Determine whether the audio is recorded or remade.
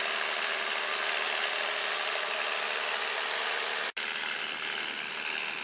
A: recorded